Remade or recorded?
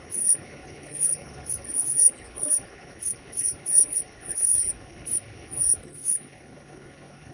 remade